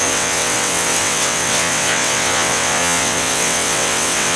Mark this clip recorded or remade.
remade